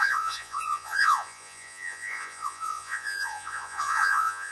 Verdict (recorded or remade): remade